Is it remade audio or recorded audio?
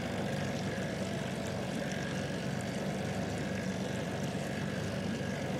recorded